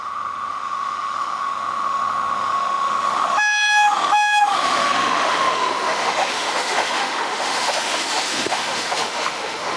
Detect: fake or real fake